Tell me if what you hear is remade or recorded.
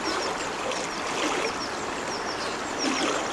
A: recorded